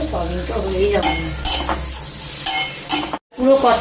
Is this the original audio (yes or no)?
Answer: yes